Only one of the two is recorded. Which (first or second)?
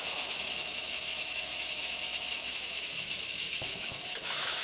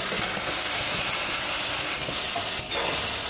second